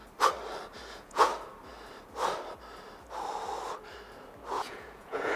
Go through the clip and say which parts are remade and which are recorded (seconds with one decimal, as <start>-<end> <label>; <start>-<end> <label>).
0.0-0.9 recorded; 0.9-1.3 remade; 1.3-4.5 recorded; 4.5-5.4 remade